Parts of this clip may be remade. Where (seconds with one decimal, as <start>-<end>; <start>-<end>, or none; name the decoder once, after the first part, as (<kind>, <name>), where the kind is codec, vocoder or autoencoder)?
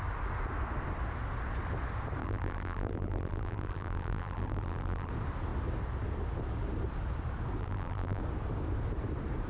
2.2-5.1 (vocoder, BigVGAN v2); 7.6-8.2